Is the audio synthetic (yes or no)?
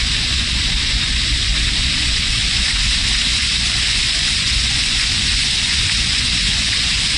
yes